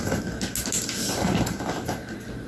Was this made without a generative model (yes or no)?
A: yes